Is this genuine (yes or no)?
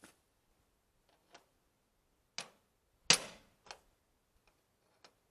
yes